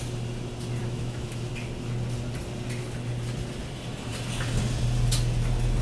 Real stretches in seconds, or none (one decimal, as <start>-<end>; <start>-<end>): 0.0-0.8; 1.5-5.8